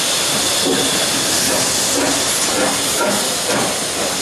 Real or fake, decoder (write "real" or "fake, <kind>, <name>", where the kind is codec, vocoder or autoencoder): real